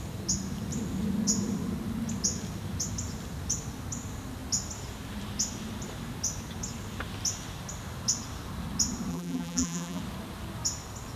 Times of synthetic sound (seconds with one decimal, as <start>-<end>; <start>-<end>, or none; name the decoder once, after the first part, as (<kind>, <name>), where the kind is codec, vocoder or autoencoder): 9.1-10.0 (vocoder, BigVGAN v2)